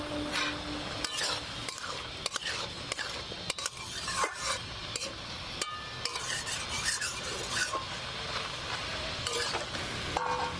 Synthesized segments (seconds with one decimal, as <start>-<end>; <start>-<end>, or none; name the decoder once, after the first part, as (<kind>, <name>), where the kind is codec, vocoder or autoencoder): 1.6-2.2 (vocoder, BigVGAN v2)